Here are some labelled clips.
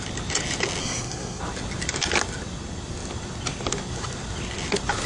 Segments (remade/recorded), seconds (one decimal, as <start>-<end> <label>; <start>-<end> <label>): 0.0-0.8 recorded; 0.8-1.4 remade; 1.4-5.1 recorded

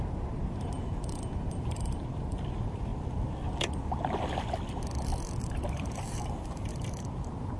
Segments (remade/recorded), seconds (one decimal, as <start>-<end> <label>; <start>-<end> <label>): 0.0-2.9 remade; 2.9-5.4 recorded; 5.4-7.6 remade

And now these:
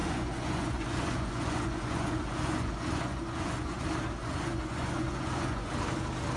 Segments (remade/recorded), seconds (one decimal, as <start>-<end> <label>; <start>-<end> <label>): 0.0-3.8 remade; 3.8-4.2 recorded; 4.2-5.7 remade; 5.7-6.4 recorded